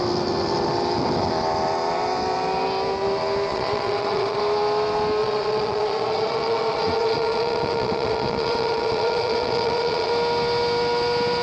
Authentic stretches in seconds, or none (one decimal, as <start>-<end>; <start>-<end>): 0.0-3.5; 4.4-5.2; 10.1-11.4